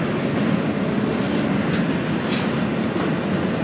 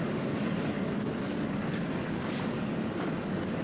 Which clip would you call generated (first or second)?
second